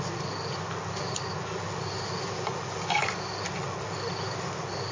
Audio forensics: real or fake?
real